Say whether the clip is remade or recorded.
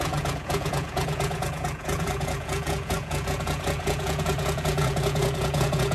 remade